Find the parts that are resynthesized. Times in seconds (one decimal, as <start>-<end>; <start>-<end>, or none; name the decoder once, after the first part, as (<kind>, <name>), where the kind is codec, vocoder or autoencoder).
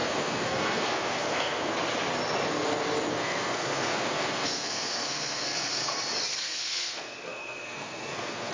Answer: 0.0-1.7 (codec, SNAC); 3.1-5.8; 6.3-8.5